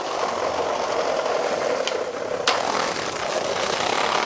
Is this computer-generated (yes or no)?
no